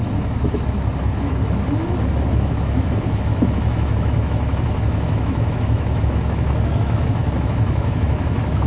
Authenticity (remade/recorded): remade